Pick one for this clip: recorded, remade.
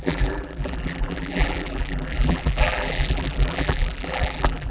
remade